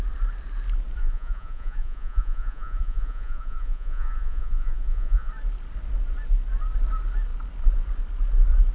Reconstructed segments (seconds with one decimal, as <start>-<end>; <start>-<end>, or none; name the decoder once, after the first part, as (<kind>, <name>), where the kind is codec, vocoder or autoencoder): 1.0-5.3 (vocoder, Vocos)

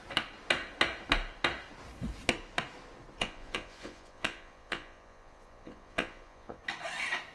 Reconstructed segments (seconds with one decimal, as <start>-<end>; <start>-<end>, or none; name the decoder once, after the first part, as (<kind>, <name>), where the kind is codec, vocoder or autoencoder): 3.2-6.6 (vocoder, Vocos)

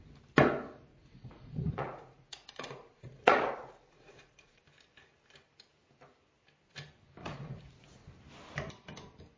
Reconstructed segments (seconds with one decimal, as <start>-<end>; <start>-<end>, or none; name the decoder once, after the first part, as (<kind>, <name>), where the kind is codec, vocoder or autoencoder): 0.9-4.6 (vocoder, Vocos); 7.2-8.1

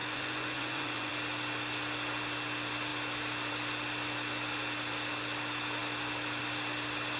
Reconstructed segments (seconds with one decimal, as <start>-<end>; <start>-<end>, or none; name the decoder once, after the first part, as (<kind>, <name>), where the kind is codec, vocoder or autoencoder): 0.0-1.1 (vocoder, Vocos)

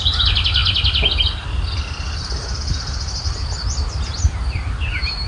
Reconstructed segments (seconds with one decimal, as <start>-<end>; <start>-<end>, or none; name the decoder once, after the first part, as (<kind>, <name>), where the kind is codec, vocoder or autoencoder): none

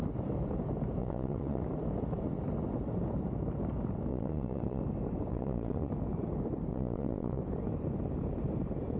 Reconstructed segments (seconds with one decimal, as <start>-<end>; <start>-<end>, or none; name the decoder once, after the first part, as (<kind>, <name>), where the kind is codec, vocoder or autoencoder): 1.0-1.6 (vocoder, Vocos); 4.1-4.8; 5.3-5.9; 6.7-7.4

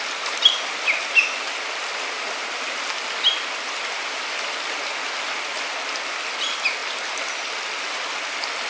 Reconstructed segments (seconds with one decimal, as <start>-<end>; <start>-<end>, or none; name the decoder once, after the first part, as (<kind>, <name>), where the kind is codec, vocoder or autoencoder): none

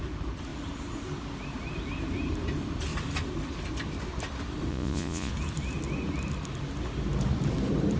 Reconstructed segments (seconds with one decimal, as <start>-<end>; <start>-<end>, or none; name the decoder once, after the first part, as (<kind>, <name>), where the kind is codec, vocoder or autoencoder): 4.7-5.3 (vocoder, Vocos)